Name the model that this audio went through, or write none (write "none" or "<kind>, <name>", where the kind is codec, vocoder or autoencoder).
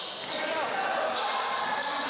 none